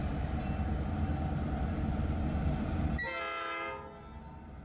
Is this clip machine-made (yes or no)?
no